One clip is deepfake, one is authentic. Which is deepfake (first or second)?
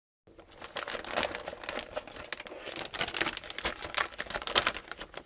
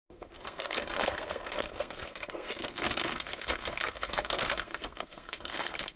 second